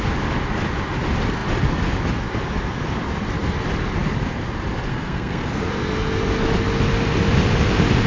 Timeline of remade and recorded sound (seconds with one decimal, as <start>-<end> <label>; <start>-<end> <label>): 0.0-4.9 recorded; 4.9-5.7 remade; 5.7-8.1 recorded